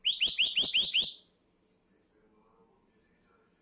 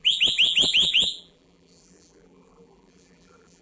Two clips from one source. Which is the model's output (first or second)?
second